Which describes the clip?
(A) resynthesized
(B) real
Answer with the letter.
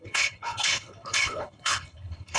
A